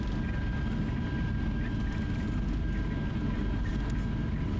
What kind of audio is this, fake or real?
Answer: real